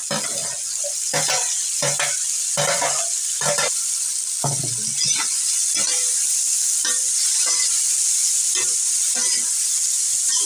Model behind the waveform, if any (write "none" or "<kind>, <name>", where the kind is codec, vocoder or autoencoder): none